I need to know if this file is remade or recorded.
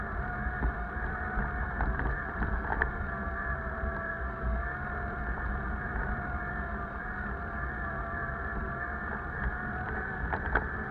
remade